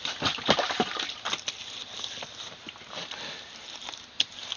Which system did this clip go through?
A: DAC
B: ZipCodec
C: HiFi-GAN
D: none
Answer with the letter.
D